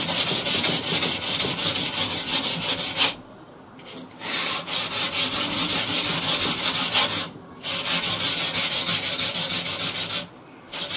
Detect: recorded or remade recorded